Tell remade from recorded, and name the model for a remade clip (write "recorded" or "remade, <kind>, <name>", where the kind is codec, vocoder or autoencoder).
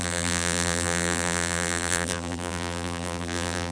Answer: remade, vocoder, BigVGAN v2